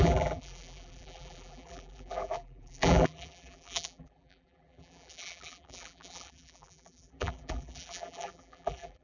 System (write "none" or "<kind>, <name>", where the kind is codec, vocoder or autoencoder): vocoder, BigVGAN v2